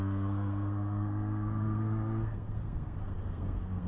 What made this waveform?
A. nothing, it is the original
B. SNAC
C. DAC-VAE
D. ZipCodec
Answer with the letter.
B